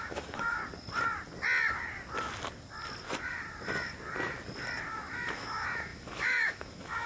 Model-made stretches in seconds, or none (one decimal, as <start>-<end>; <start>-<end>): 0.0-0.6; 4.9-7.1